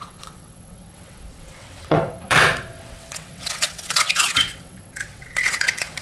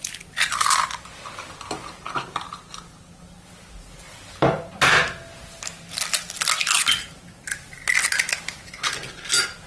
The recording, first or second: second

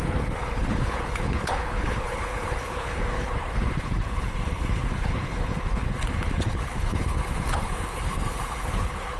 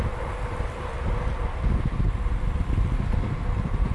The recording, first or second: second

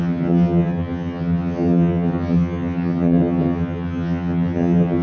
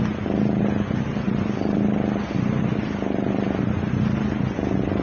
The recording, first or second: second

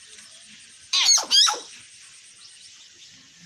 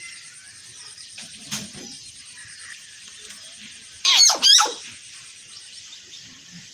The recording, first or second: first